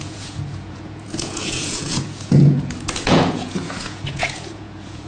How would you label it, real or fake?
fake